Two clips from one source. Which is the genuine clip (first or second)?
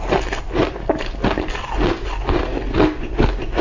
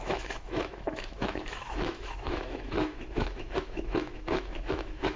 first